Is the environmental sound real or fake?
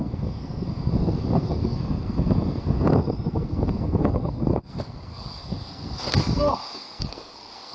fake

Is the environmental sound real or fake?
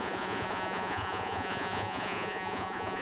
fake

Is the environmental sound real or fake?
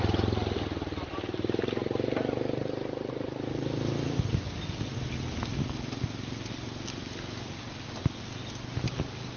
real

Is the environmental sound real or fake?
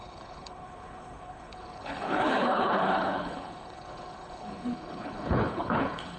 fake